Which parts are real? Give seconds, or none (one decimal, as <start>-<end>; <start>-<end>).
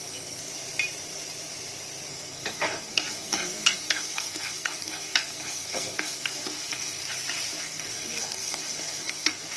0.5-2.1; 7.0-7.6